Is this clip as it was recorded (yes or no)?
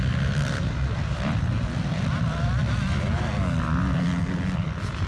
yes